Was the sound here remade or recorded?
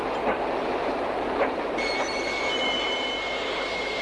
remade